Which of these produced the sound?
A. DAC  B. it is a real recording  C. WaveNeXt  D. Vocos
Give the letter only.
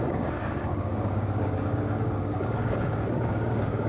A